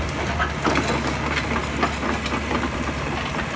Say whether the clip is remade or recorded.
recorded